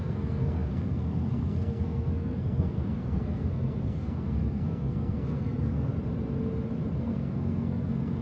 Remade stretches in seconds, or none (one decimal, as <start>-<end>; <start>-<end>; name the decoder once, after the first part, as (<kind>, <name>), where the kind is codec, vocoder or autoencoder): 0.0-5.9 (codec, SNAC); 7.0-8.2